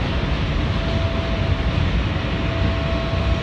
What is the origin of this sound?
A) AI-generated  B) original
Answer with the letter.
B